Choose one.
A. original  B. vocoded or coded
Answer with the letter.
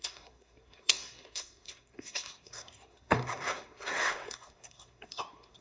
B